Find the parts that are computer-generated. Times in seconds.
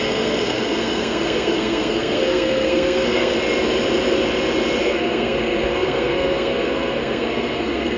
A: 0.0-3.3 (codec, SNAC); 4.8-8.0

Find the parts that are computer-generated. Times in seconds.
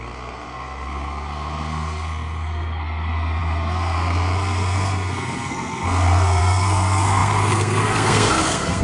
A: 0.0-8.8 (codec, SNAC)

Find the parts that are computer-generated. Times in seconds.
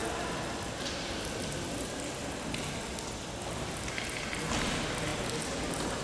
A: none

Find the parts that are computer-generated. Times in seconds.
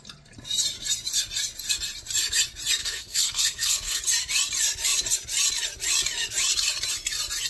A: 2.8-4.0 (codec, SNAC)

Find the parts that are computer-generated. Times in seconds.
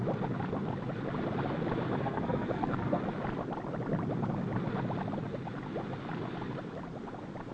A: 2.0-3.0 (codec, SNAC)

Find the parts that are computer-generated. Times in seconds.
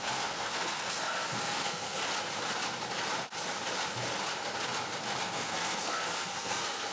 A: 0.0-2.0 (codec, SNAC); 5.2-6.9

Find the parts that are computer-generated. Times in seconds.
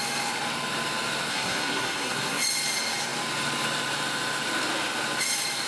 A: 1.3-2.4 (codec, SNAC)